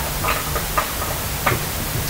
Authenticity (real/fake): real